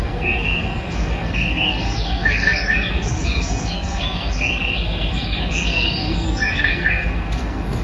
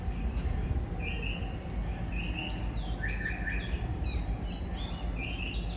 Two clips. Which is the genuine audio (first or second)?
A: second